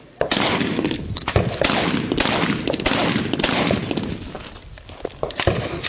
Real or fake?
real